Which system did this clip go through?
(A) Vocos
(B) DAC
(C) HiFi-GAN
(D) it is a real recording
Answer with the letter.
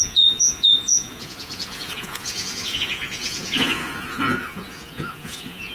A